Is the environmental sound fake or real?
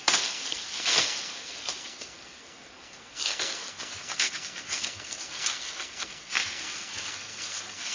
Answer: fake